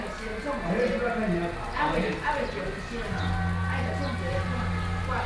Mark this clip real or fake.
real